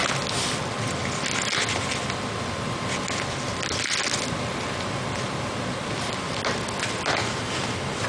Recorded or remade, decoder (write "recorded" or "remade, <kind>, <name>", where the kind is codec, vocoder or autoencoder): recorded